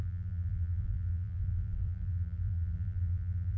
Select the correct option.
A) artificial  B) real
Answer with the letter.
A